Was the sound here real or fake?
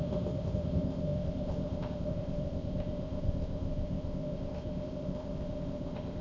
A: fake